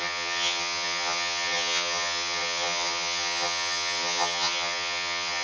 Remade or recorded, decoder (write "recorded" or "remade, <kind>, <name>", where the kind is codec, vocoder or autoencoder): remade, vocoder, HiFi-GAN